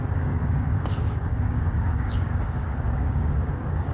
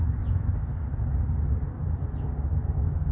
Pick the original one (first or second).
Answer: second